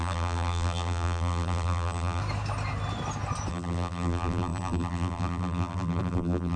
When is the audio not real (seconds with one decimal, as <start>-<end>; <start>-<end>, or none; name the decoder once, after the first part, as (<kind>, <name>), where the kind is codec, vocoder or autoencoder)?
0.0-2.2 (vocoder, BigVGAN v2); 3.5-6.6